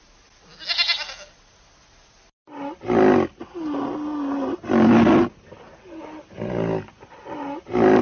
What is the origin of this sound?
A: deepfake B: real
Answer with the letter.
B